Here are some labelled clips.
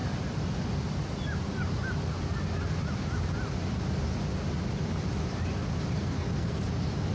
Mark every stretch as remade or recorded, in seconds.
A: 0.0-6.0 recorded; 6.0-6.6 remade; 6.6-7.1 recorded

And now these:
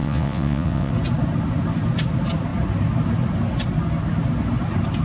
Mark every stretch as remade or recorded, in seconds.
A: 0.0-0.9 remade; 0.9-5.0 recorded

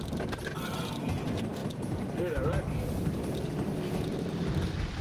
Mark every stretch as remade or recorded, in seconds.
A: 0.0-5.0 remade